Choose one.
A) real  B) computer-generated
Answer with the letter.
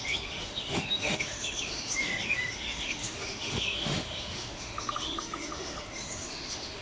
B